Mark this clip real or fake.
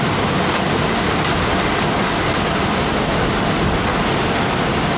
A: real